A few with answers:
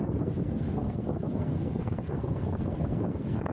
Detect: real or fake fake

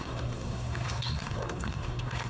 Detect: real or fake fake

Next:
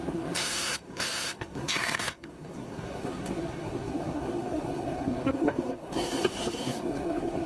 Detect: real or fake fake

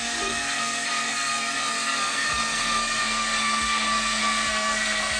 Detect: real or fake fake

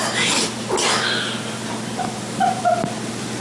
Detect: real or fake real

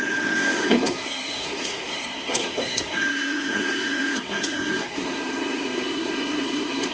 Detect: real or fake fake